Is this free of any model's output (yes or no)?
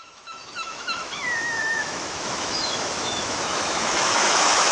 no